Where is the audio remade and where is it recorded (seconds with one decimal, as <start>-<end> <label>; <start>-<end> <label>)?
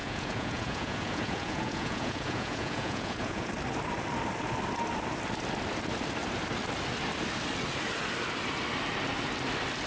0.0-3.5 remade; 3.5-9.9 recorded